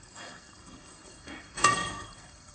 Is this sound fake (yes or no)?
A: yes